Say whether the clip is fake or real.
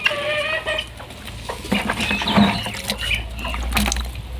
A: real